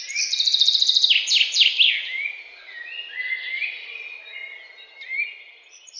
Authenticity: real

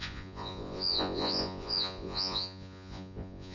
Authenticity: fake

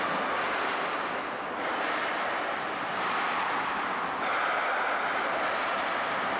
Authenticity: real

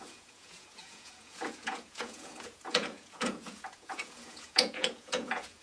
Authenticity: fake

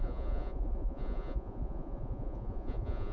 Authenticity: fake